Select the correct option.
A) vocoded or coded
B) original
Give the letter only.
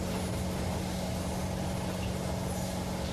B